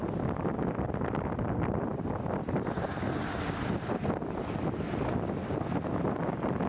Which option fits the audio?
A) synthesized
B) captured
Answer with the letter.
B